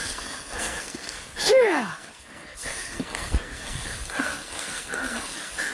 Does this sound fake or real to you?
fake